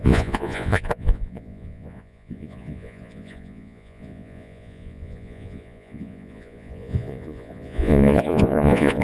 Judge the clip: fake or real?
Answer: fake